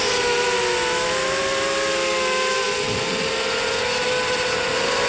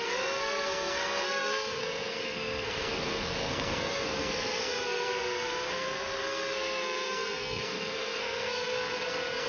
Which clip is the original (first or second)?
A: first